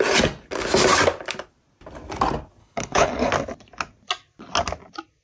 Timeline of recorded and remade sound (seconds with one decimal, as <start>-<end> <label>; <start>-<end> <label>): 0.0-2.6 recorded; 2.6-3.3 remade; 3.3-5.2 recorded